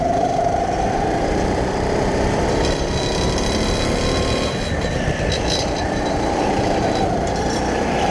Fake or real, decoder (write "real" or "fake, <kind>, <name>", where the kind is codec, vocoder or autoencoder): fake, vocoder, BigVGAN v2